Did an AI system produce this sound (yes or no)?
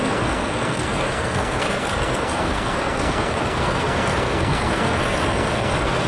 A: yes